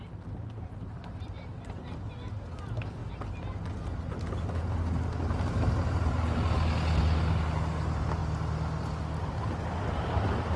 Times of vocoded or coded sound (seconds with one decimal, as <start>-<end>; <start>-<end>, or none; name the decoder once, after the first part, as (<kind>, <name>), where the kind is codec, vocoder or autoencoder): none